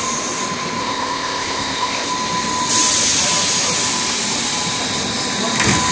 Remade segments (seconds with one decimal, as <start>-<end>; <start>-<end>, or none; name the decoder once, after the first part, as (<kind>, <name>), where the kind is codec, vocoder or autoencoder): 0.8-2.1 (codec, ZipCodec)